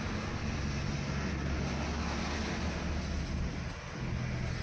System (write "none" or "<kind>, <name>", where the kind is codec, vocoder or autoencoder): none